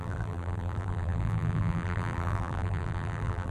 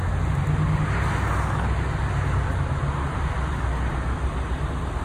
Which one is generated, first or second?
first